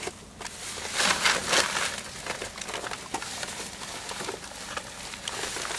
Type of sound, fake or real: real